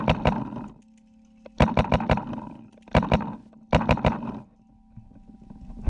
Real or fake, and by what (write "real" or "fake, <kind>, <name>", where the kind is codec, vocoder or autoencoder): real